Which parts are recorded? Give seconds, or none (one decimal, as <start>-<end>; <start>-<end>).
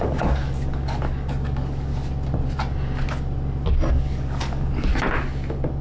1.9-3.9; 4.9-5.8